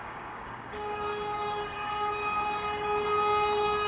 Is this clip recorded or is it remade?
remade